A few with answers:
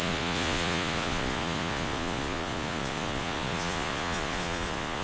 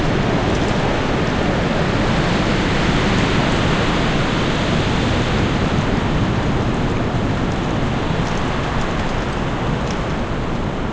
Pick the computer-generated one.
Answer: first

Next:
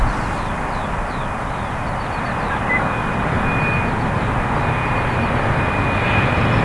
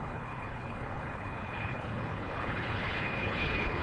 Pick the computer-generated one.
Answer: second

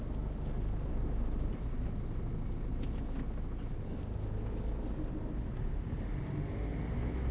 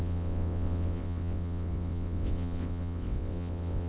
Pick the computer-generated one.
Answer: second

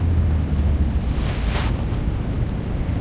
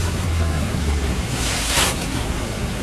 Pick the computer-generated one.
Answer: second